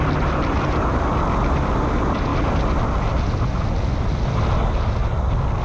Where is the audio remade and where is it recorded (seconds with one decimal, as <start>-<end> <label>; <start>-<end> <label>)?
0.0-5.6 recorded

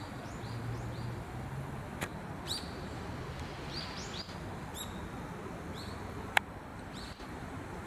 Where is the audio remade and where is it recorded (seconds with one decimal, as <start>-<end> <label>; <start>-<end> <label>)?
0.0-2.1 recorded; 2.1-3.2 remade; 3.2-6.7 recorded; 6.7-7.9 remade

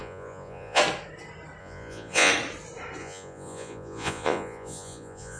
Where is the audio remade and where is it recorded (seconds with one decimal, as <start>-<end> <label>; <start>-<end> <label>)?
0.0-0.8 remade; 0.8-1.6 recorded; 1.6-2.3 remade; 2.3-3.0 recorded; 3.0-5.4 remade

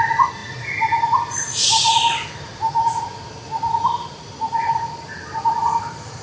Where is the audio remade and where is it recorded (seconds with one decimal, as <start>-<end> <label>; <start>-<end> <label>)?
0.0-6.2 recorded